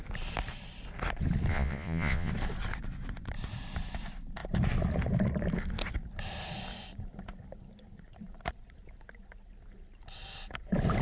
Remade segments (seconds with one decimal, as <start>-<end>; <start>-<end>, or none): 1.5-2.3